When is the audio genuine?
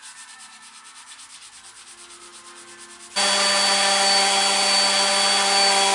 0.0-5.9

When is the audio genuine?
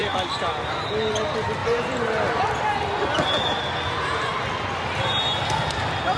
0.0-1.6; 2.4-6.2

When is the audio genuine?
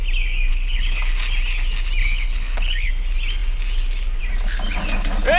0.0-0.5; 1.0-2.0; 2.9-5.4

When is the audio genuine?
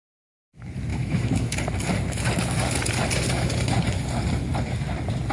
0.0-0.9; 1.6-5.3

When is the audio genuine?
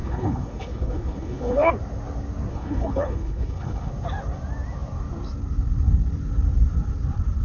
1.7-2.5; 3.9-7.4